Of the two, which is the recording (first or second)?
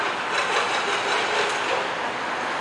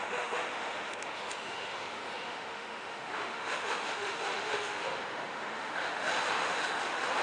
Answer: first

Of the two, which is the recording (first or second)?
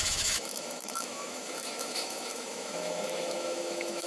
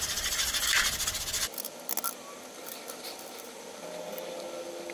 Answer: second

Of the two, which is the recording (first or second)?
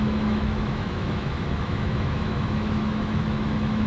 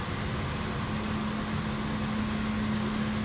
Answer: second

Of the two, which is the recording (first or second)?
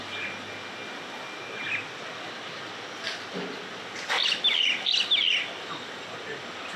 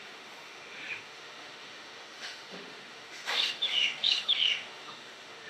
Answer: first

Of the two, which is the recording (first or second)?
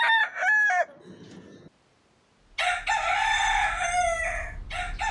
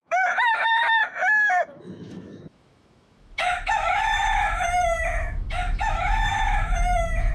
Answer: first